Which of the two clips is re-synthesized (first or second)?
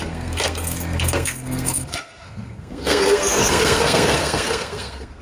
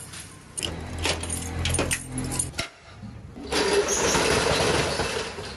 first